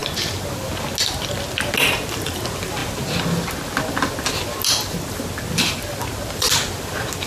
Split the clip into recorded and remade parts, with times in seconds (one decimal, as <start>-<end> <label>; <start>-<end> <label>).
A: 0.0-7.3 recorded